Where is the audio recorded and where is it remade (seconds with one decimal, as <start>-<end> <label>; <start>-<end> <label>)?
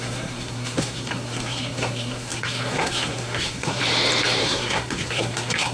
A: 0.0-3.8 remade; 3.8-4.4 recorded; 4.4-5.7 remade